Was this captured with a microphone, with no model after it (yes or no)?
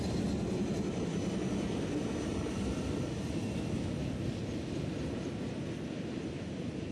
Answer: yes